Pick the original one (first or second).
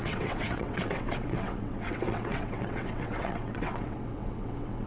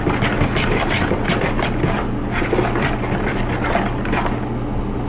second